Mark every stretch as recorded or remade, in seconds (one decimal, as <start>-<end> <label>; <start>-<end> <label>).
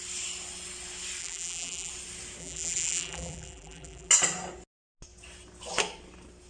0.0-1.2 recorded; 1.2-1.9 remade; 1.9-2.4 recorded; 2.4-4.1 remade; 4.1-6.5 recorded